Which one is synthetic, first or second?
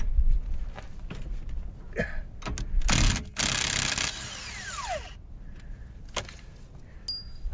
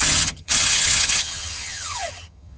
second